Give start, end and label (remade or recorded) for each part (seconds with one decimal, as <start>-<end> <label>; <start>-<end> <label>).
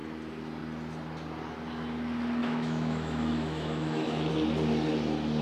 0.0-2.4 recorded; 2.4-4.3 remade; 4.3-5.4 recorded